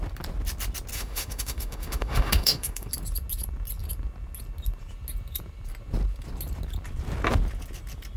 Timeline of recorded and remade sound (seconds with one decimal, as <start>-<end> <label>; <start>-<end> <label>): 0.0-0.9 recorded; 0.9-2.9 remade; 2.9-8.2 recorded